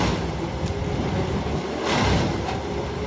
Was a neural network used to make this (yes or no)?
no